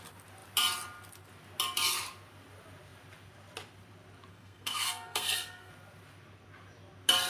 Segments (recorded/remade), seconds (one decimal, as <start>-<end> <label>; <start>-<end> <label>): 0.0-4.3 recorded; 4.3-5.7 remade; 5.7-7.3 recorded